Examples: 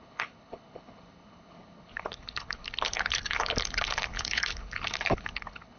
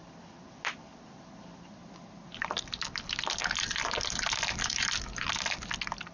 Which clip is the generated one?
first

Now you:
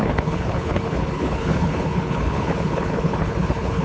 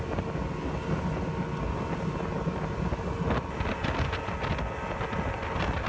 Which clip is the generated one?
first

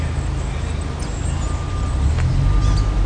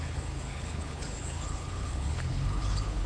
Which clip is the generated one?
second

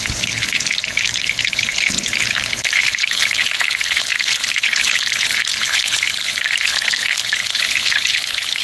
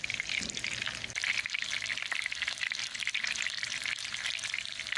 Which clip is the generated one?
first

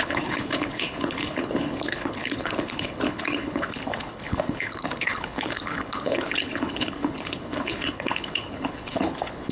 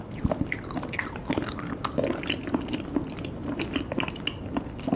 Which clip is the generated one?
first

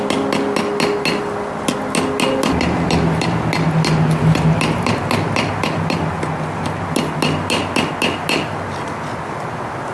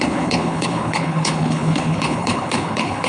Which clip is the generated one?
second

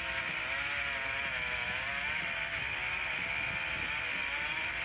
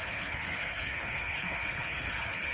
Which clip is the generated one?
second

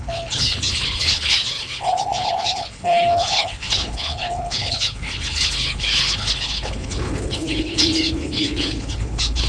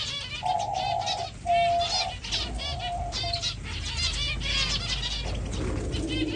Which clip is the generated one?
first